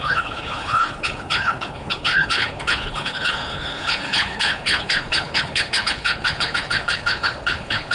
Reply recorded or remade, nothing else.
remade